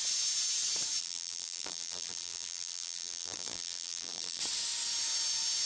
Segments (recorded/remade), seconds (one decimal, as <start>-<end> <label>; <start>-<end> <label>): 0.0-1.0 recorded; 1.0-4.4 remade; 4.4-5.7 recorded